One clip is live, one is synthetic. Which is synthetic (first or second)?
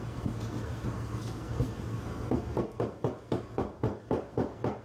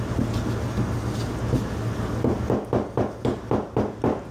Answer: first